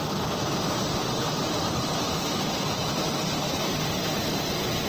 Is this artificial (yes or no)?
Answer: yes